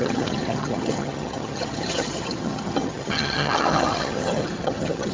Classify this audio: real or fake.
fake